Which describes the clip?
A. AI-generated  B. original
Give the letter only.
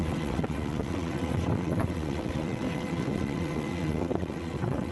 A